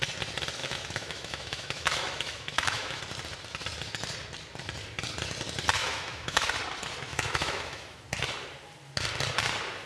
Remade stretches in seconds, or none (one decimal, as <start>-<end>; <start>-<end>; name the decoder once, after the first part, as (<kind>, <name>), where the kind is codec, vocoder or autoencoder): 0.6-3.0 (autoencoder, DAC-VAE); 5.8-6.5; 7.1-8.0